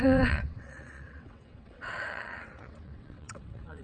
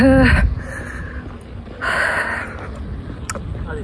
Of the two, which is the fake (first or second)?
first